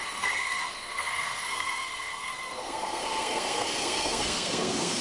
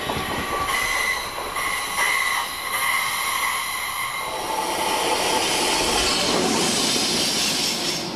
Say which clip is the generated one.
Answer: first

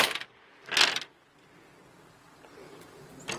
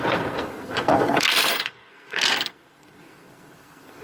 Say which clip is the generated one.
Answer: second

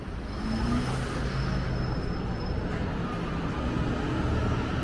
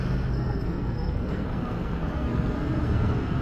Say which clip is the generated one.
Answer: second